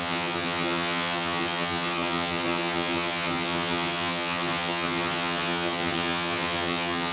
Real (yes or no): no